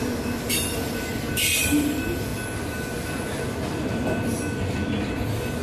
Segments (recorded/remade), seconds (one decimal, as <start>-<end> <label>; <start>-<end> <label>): 0.0-5.6 recorded